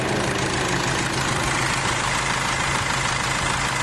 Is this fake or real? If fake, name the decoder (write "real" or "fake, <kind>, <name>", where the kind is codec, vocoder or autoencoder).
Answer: real